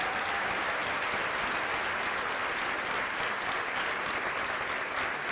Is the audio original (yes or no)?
yes